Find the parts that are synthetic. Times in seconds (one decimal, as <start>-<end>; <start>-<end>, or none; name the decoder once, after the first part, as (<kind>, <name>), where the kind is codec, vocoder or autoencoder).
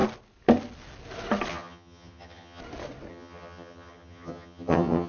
1.5-2.6 (vocoder, HiFi-GAN); 3.1-5.1